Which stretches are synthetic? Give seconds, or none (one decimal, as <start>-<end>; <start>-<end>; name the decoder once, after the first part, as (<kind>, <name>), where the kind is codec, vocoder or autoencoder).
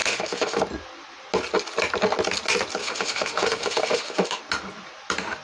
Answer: 0.0-0.6 (autoencoder, DAC-VAE); 2.8-4.4